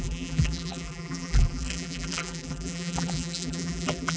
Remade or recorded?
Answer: remade